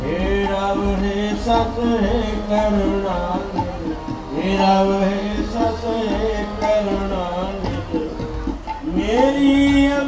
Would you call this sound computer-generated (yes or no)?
no